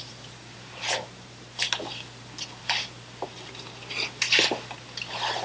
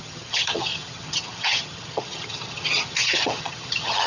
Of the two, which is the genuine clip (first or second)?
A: first